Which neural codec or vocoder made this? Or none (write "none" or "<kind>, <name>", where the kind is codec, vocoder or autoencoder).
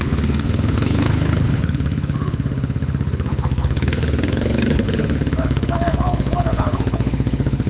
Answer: codec, HILCodec